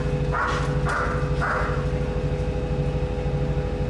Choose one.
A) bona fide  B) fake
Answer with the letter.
A